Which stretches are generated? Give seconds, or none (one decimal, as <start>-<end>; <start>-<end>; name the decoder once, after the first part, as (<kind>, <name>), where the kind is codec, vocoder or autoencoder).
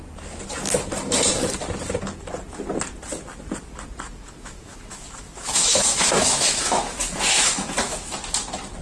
4.1-8.1 (autoencoder, DAC-VAE)